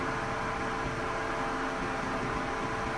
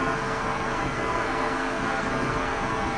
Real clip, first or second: first